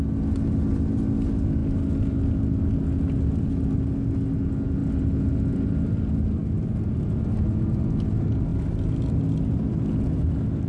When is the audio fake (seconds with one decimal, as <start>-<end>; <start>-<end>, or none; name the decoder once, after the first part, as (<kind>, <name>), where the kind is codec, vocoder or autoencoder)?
none